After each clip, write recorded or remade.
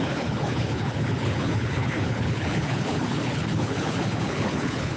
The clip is remade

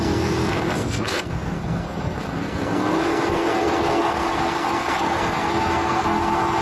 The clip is remade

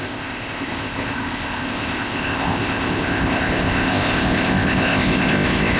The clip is remade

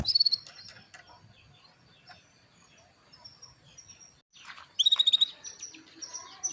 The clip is recorded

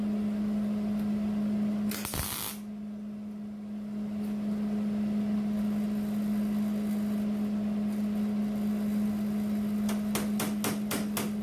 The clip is recorded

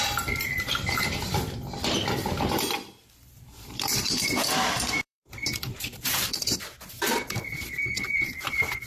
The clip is remade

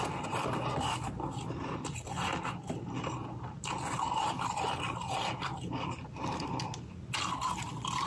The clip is recorded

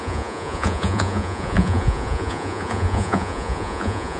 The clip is remade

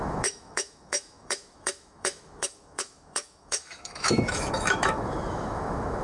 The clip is remade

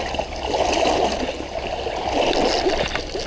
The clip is recorded